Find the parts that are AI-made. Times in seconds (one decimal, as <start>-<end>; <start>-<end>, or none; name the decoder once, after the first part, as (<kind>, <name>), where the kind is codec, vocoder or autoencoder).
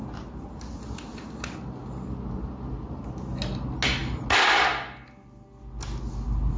none